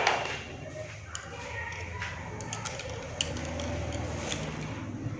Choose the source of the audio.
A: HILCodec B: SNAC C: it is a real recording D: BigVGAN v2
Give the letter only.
C